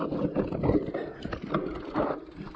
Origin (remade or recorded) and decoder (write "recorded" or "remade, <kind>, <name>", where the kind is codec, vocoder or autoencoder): recorded